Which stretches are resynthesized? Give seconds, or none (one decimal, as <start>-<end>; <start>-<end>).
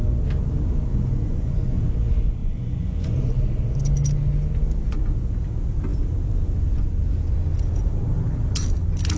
0.9-1.8; 2.4-3.3